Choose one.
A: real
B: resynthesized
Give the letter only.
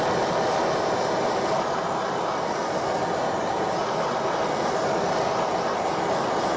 A